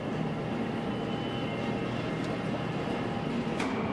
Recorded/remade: recorded